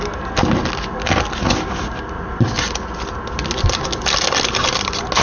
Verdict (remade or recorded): recorded